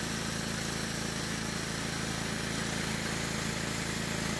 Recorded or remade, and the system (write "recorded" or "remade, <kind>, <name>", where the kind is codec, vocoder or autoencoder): recorded